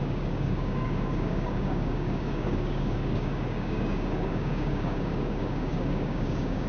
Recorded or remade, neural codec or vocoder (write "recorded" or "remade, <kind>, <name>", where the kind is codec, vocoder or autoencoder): remade, codec, DAC